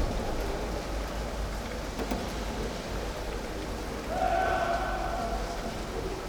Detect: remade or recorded recorded